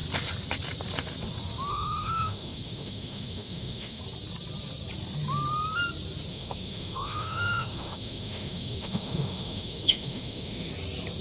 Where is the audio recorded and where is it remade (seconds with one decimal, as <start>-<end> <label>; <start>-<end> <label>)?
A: 0.0-1.7 recorded; 1.7-4.0 remade; 4.0-6.3 recorded; 6.3-10.7 remade; 10.7-11.2 recorded